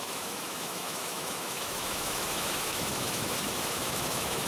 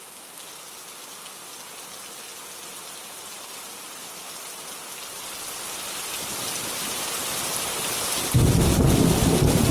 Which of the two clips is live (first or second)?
second